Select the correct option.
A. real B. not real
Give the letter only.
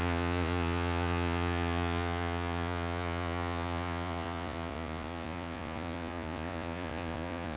B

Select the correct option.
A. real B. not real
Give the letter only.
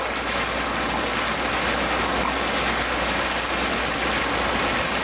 A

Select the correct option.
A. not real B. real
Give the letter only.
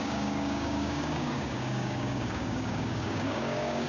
A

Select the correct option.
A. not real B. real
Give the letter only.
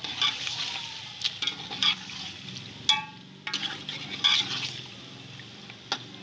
B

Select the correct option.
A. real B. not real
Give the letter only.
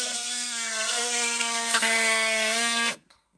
B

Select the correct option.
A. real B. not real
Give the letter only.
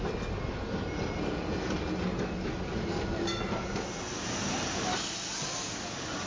A